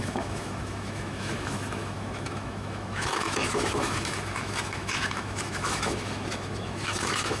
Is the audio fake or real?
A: fake